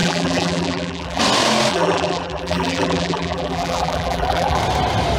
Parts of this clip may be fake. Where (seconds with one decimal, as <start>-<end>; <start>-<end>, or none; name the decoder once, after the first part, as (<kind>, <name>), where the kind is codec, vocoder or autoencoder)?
0.0-1.2 (vocoder, BigVGAN v2); 1.7-4.6